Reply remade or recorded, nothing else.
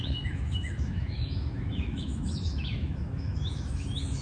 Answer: remade